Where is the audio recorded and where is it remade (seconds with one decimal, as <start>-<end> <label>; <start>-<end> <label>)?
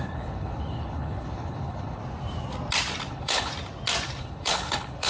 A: 0.0-2.0 remade; 2.0-3.1 recorded; 3.1-3.5 remade; 3.5-4.2 recorded; 4.2-5.1 remade